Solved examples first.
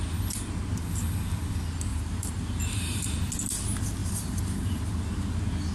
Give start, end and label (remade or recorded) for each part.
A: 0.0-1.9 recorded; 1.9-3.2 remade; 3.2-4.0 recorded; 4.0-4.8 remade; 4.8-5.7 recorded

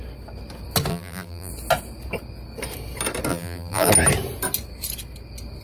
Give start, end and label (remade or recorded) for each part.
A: 0.0-0.9 recorded; 0.9-1.5 remade; 1.5-3.3 recorded; 3.3-3.9 remade; 3.9-5.6 recorded

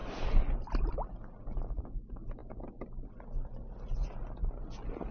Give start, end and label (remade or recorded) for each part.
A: 0.0-5.1 recorded

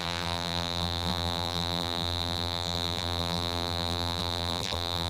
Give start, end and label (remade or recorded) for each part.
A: 0.0-5.1 remade

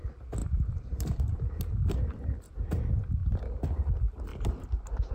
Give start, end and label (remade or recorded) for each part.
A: 0.0-0.4 recorded; 0.4-2.2 remade; 2.2-4.3 recorded; 4.3-5.1 remade

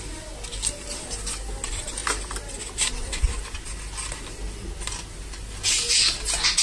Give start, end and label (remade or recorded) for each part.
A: 0.0-6.6 recorded